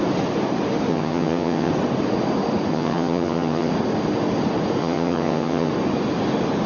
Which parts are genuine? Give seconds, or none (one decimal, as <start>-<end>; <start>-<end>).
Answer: 0.0-0.9; 1.7-2.7; 3.7-4.8; 5.7-6.7